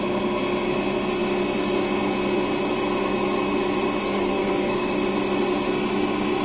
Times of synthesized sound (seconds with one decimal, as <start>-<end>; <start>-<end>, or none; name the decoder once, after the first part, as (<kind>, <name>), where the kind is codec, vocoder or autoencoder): 4.0-4.9 (codec, SNAC)